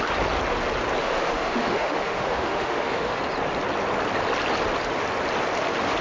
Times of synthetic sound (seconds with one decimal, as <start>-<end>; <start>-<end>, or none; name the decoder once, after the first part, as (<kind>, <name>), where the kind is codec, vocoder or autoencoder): 1.0-3.2 (autoencoder, DAC-VAE)